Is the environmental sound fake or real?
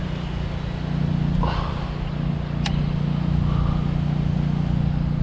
real